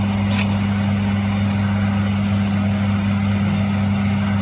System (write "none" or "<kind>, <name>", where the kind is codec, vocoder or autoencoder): none